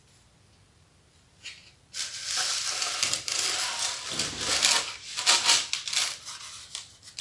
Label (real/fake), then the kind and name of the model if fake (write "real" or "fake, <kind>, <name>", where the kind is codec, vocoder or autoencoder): real